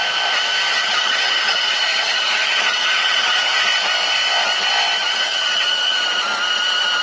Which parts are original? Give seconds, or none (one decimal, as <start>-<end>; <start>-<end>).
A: 0.0-0.7; 3.6-5.1; 6.0-7.0